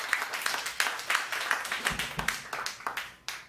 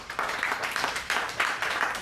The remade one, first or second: second